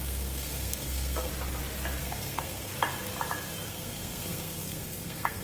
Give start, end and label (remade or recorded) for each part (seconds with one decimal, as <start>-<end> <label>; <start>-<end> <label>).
0.0-1.3 remade; 1.3-2.0 recorded; 2.0-2.7 remade; 2.7-3.7 recorded; 3.7-5.4 remade